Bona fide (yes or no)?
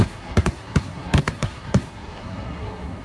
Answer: no